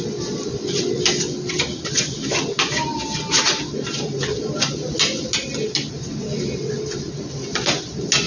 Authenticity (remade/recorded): recorded